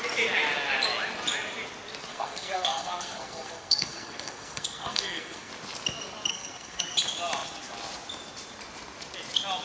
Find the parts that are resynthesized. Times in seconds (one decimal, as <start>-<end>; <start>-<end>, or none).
2.1-5.5; 6.3-6.8